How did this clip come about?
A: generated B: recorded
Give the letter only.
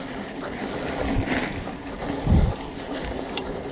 B